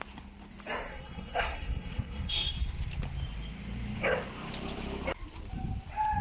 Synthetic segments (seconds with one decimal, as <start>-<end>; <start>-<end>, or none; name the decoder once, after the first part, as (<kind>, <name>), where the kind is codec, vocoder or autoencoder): 0.9-2.5 (codec, SNAC)